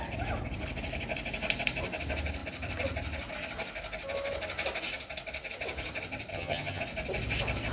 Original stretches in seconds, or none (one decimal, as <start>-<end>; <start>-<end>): 0.0-6.3; 6.8-7.7